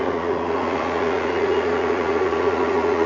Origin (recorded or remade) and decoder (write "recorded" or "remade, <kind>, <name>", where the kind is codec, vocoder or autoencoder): remade, vocoder, Vocos